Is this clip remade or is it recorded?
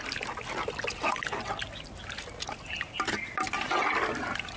recorded